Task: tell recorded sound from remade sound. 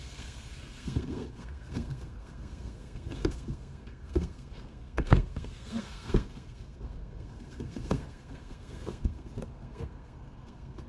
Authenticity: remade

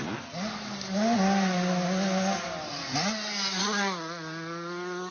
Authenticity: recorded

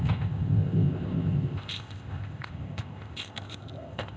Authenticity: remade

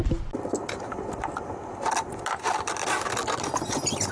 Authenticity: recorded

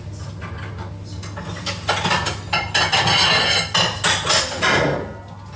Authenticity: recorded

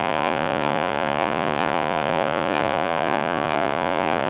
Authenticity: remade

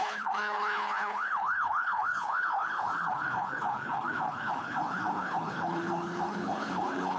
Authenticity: remade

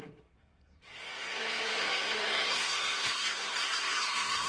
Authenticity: remade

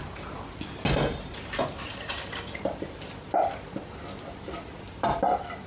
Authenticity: recorded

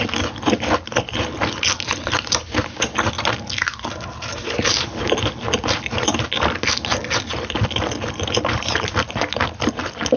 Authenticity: recorded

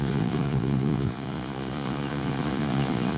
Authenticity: remade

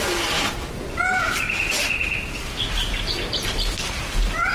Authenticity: recorded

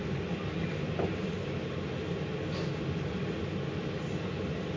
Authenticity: recorded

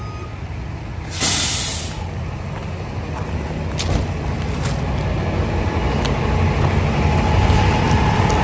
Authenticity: recorded